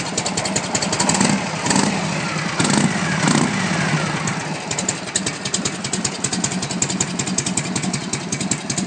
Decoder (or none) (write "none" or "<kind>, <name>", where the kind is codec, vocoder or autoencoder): none